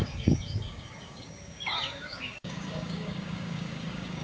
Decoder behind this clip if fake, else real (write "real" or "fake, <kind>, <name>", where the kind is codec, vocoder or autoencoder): fake, codec, DAC